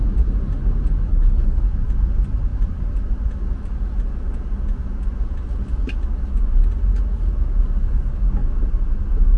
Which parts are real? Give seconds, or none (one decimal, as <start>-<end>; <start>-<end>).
0.0-1.1; 1.6-9.4